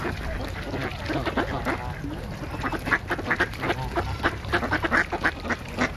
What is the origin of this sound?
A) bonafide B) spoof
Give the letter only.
A